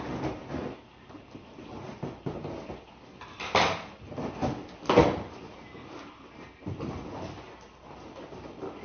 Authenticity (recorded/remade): recorded